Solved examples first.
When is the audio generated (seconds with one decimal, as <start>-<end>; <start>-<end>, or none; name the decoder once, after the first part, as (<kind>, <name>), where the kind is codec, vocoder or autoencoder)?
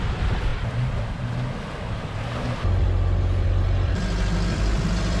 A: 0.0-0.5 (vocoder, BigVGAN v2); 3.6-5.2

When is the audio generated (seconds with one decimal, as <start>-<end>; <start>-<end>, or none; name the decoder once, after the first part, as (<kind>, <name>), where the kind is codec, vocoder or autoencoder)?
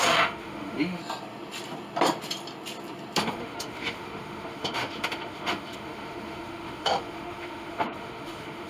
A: 0.0-1.0 (autoencoder, DAC-VAE); 3.2-8.7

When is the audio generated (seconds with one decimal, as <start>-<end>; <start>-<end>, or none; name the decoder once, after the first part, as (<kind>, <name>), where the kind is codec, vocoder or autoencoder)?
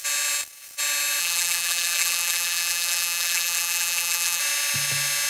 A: 1.2-4.4 (vocoder, BigVGAN v2)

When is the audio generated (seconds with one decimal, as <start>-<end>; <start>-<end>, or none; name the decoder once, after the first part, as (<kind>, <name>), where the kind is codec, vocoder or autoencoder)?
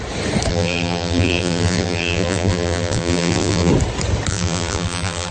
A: 0.5-3.7 (vocoder, BigVGAN v2); 4.3-5.3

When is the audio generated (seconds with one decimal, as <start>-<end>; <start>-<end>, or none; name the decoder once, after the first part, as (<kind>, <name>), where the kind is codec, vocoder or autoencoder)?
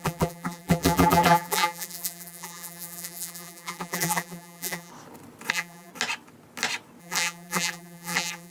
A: 0.0-4.9 (vocoder, BigVGAN v2); 5.5-5.9; 7.0-8.5